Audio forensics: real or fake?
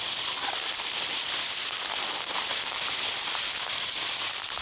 real